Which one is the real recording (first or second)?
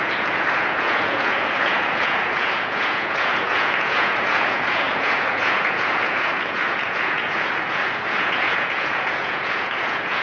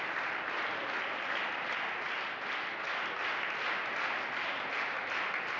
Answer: second